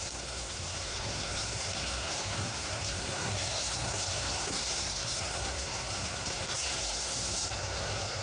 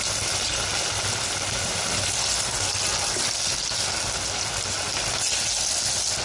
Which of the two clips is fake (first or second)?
first